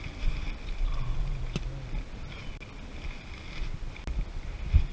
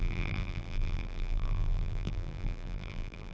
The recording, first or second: first